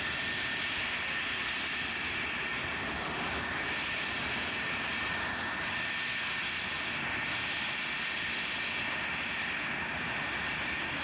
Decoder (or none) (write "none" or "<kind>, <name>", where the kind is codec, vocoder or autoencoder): none